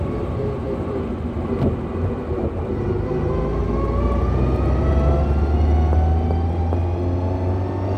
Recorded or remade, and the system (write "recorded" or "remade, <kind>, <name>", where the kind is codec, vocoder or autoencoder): recorded